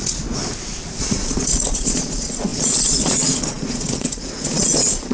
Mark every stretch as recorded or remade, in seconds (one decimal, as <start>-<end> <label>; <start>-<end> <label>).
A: 0.0-0.4 remade; 0.4-1.0 recorded; 1.0-5.1 remade